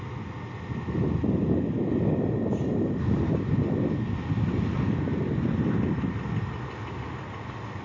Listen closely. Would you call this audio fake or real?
real